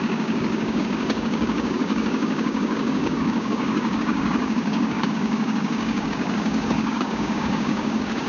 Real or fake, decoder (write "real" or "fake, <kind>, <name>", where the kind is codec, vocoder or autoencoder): fake, codec, DAC